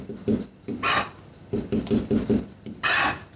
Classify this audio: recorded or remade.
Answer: recorded